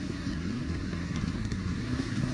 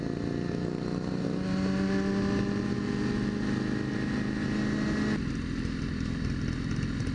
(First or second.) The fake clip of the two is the first